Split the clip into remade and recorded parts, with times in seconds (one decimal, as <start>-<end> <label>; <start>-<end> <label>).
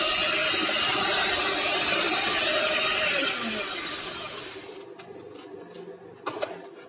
0.0-0.4 recorded; 0.4-3.6 remade; 3.6-6.9 recorded